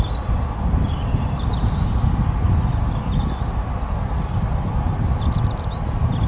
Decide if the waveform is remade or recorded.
recorded